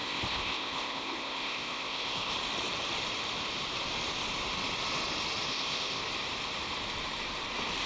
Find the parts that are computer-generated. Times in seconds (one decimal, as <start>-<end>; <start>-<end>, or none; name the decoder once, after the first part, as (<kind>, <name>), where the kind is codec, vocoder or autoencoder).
0.0-2.3 (codec, ZipCodec); 5.5-6.0